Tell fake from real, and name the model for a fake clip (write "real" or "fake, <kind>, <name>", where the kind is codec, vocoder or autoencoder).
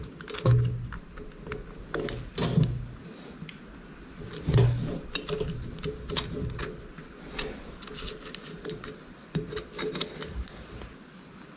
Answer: real